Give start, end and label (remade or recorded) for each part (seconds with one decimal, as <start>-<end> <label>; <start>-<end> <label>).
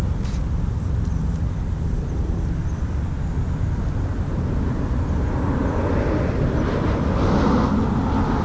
0.0-8.4 recorded